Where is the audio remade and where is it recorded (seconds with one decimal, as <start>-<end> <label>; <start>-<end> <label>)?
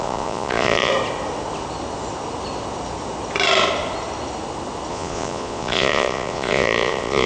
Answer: 0.0-0.9 remade; 0.9-4.9 recorded; 4.9-7.3 remade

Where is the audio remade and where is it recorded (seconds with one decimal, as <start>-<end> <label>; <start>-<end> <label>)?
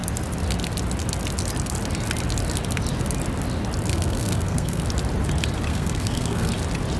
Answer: 0.0-3.9 recorded; 3.9-4.8 remade; 4.8-5.7 recorded; 5.7-6.5 remade; 6.5-7.0 recorded